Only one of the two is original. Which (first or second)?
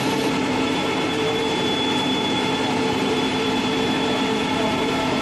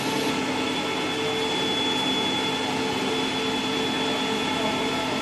second